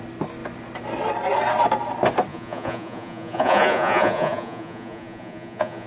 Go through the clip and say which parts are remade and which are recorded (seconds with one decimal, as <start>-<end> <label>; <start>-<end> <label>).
0.0-2.3 recorded; 2.3-5.9 remade